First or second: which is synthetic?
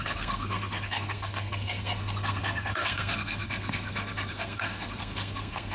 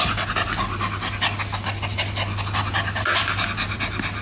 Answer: first